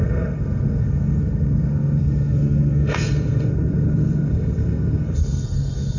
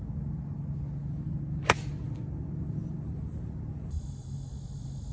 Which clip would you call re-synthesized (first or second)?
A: first